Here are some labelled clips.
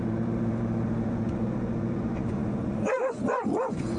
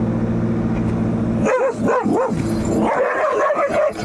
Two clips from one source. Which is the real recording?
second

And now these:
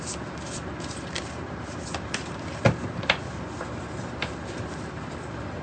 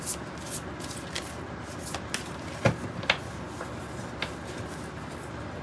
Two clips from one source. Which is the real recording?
second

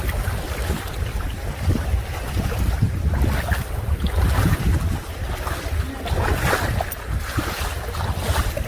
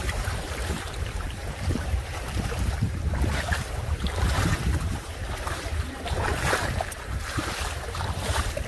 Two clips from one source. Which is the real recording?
first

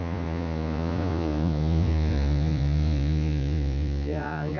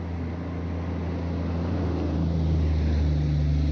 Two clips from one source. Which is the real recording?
second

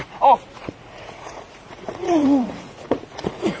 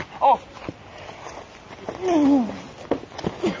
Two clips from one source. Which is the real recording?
second